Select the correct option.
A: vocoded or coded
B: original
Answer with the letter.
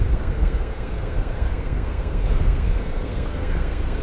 A